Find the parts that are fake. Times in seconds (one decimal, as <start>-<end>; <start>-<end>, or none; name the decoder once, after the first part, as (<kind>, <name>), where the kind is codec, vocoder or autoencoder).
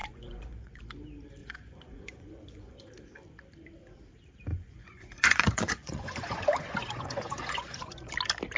0.0-0.8 (vocoder, Vocos); 1.4-2.9; 4.5-8.1